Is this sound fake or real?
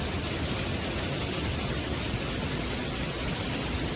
real